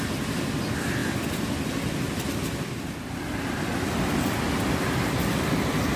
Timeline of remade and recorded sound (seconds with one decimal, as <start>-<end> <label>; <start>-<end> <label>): 0.0-6.0 recorded